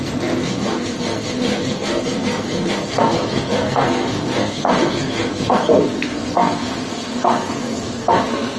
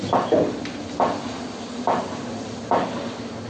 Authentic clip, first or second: second